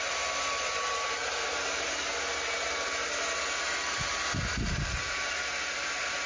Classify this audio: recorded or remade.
recorded